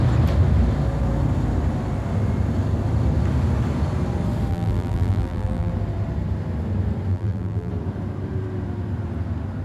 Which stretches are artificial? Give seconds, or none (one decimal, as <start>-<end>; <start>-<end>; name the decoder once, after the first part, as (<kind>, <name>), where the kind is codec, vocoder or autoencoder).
4.5-5.7 (vocoder, BigVGAN v2); 7.1-7.7